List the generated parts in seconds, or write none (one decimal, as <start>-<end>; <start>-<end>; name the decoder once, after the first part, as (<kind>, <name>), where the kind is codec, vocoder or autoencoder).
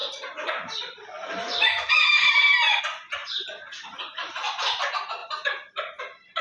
0.0-2.8 (vocoder, BigVGAN v2); 3.2-4.8; 5.2-6.0